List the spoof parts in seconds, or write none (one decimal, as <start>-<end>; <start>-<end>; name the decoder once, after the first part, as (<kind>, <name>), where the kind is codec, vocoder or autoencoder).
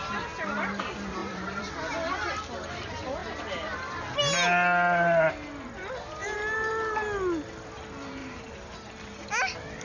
1.2-1.7 (vocoder, BigVGAN v2); 6.2-6.7; 8.2-8.9